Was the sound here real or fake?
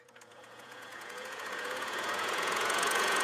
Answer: fake